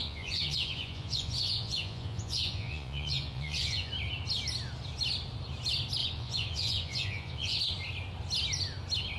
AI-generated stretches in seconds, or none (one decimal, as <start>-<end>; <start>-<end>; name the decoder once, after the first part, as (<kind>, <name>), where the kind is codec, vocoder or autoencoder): 0.0-3.9 (vocoder, Vocos); 6.0-7.6